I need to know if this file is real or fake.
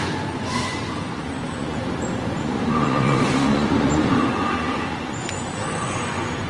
fake